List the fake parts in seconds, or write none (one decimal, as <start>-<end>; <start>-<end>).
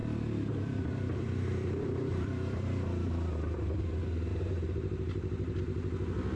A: 0.0-3.8; 4.3-5.6